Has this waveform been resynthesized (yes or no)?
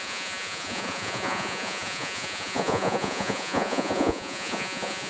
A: yes